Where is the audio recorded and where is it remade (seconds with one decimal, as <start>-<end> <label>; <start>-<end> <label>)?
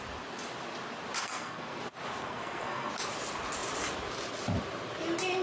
0.0-1.2 recorded; 1.2-1.8 remade; 1.8-2.2 recorded; 2.2-2.9 remade; 2.9-5.4 recorded